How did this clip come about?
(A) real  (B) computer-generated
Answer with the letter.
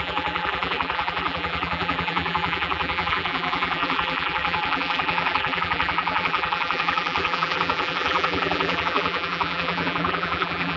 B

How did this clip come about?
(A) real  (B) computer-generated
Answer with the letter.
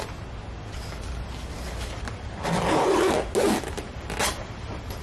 A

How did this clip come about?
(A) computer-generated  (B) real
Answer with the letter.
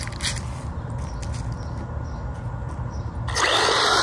B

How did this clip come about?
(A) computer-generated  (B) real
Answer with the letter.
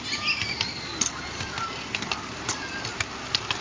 B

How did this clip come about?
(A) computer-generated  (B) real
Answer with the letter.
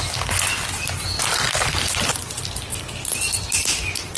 B